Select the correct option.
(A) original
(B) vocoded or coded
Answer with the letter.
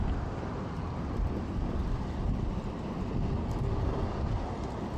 A